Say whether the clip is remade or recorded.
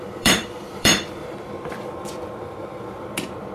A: remade